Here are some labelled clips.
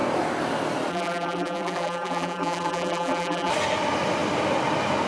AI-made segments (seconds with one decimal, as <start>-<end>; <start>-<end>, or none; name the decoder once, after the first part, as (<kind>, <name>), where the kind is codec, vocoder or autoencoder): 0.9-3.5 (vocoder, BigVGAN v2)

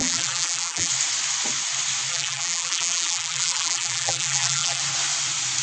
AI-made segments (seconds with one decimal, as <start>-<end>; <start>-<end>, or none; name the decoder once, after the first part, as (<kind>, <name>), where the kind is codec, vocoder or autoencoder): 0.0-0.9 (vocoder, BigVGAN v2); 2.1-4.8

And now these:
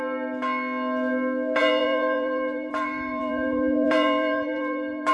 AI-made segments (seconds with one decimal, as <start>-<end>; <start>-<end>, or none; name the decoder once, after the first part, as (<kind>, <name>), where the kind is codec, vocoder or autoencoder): 1.6-5.1 (vocoder, BigVGAN v2)